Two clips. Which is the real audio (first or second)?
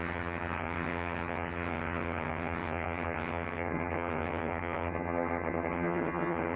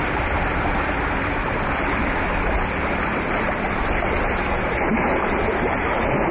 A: second